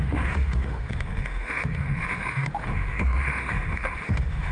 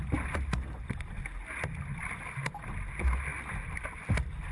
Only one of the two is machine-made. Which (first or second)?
first